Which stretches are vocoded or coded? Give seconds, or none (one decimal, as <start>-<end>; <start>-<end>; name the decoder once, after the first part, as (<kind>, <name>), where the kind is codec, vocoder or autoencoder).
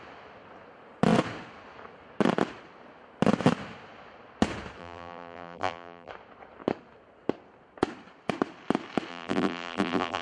4.8-6.1 (vocoder, BigVGAN v2); 9.1-10.2